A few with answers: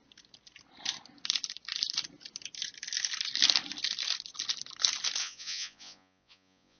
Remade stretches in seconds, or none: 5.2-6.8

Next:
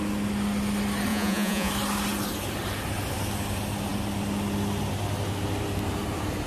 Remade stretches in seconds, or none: 1.1-1.7

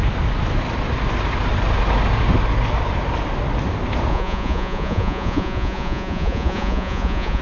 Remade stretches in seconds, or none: 4.1-7.4

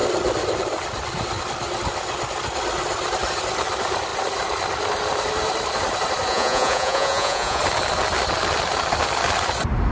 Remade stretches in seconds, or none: 6.3-7.6

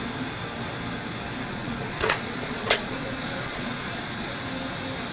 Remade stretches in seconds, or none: 1.5-4.4

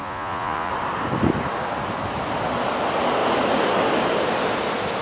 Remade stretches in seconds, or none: 0.0-0.7